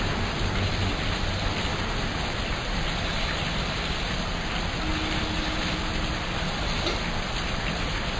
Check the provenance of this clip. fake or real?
real